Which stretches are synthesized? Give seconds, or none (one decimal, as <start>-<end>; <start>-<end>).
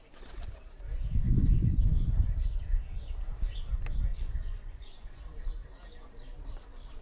1.1-2.2; 4.1-5.2